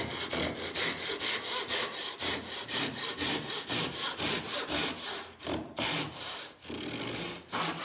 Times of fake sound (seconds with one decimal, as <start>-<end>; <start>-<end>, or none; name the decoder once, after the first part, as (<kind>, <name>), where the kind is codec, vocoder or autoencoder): 2.0-6.6 (vocoder, BigVGAN v2)